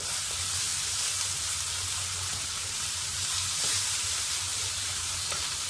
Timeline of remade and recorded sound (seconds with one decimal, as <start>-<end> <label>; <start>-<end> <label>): 0.0-0.7 remade; 0.7-2.7 recorded; 2.7-5.7 remade